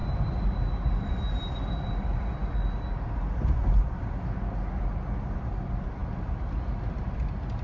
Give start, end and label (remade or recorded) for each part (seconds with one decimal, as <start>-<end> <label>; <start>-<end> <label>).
0.0-7.6 recorded